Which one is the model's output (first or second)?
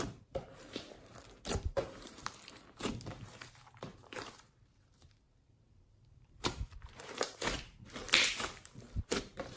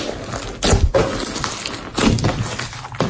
first